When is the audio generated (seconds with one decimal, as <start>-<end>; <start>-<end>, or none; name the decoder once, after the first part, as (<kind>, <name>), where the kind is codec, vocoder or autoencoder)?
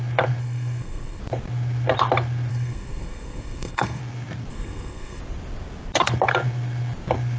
0.4-1.2 (codec, SNAC); 2.5-4.0; 4.5-5.2